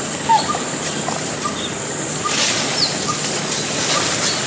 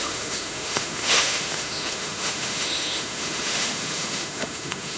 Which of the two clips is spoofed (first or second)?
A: second